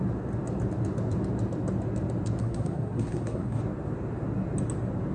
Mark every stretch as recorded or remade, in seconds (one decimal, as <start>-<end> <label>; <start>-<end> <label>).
0.0-2.4 recorded; 2.4-3.6 remade; 3.6-5.1 recorded